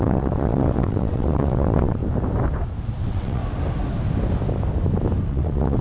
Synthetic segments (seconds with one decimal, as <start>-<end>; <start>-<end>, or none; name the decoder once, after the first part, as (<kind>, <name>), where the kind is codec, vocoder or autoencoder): 0.0-2.0 (vocoder, WaveNeXt); 3.0-3.4; 5.3-5.8